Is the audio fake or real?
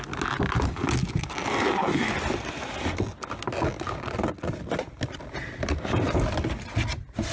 real